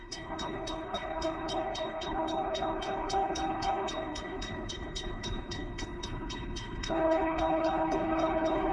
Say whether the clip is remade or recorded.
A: remade